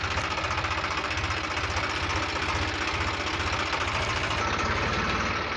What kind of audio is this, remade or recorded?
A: recorded